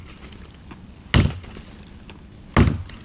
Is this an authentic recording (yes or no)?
yes